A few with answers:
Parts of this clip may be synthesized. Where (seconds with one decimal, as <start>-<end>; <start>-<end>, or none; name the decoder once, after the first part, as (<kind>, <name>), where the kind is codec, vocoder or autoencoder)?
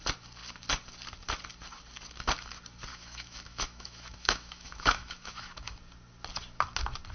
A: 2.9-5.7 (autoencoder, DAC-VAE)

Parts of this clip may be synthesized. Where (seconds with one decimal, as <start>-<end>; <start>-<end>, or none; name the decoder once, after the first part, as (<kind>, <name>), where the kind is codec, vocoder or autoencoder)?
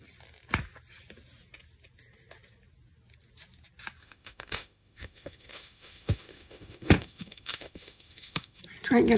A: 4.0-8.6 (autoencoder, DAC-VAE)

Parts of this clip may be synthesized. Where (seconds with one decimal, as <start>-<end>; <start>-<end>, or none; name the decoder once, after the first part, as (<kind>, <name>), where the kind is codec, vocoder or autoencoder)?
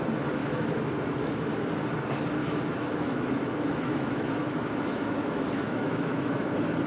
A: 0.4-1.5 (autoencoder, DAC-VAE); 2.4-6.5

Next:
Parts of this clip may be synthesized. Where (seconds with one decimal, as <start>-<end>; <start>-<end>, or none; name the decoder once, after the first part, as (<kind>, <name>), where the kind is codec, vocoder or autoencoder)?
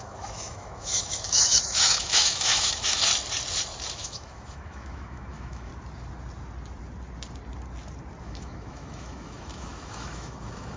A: 0.0-3.1 (autoencoder, DAC-VAE); 3.9-5.7; 8.2-10.8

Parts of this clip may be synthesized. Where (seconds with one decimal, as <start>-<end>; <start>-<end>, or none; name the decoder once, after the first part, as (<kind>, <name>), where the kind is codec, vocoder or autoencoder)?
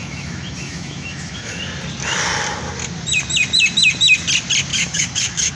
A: 0.0-1.6 (autoencoder, DAC-VAE); 4.7-5.5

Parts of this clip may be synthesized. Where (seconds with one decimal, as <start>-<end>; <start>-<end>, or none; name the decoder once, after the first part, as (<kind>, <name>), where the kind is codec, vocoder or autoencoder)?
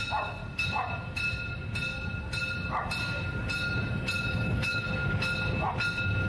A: 0.0-0.4 (autoencoder, DAC-VAE); 4.2-4.9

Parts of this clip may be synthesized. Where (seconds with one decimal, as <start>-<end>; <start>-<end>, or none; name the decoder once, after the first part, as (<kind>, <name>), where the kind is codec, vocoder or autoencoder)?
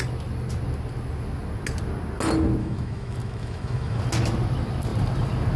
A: 2.6-4.0 (autoencoder, DAC-VAE)